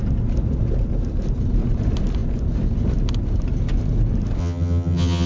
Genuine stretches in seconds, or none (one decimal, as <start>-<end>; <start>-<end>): 0.0-4.4